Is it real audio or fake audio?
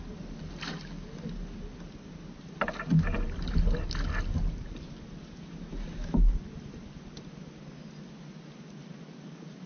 real